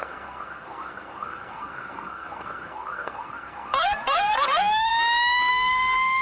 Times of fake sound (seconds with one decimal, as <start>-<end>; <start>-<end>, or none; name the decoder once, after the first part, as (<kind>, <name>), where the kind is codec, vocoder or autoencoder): 0.0-4.9 (codec, SNAC); 5.5-6.2